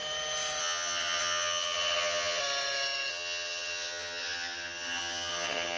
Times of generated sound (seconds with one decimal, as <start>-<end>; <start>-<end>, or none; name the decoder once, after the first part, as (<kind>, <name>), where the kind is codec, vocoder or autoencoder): 0.6-2.4 (vocoder, HiFi-GAN); 3.1-5.8